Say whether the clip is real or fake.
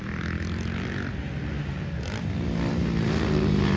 real